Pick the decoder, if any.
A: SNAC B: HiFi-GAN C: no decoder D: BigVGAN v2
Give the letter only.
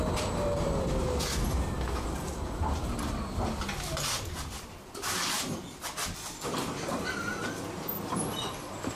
D